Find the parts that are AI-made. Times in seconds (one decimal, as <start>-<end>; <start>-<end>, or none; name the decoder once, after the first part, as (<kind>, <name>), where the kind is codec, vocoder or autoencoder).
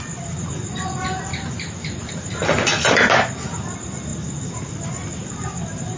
1.3-2.1 (vocoder, BigVGAN v2)